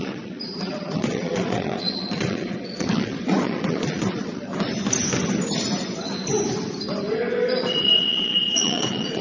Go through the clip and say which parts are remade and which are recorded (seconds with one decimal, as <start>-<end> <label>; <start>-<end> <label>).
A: 0.0-4.5 remade; 4.5-7.6 recorded; 7.6-9.2 remade